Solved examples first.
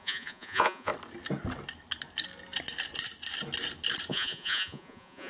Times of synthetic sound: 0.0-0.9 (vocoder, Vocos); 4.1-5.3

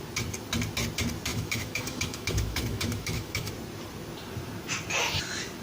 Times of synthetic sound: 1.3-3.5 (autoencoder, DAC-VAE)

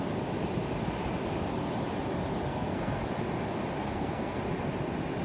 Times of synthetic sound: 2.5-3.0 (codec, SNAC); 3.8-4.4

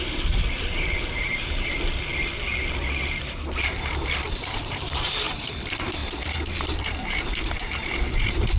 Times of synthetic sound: 0.0-2.1 (vocoder, BigVGAN v2); 2.7-8.6

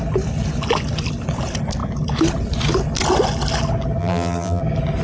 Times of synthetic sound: 4.0-4.6 (vocoder, BigVGAN v2)